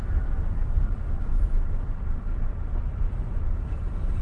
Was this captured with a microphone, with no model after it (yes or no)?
yes